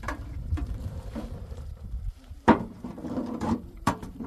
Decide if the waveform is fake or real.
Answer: fake